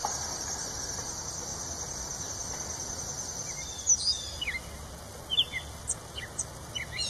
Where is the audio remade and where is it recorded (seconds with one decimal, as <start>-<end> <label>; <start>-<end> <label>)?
0.0-7.1 recorded